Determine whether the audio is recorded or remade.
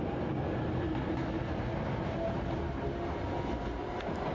recorded